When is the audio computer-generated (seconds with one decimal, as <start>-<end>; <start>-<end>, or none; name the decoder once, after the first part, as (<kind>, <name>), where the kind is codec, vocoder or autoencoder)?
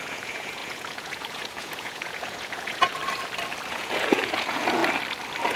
0.0-3.0 (vocoder, Vocos); 3.7-4.8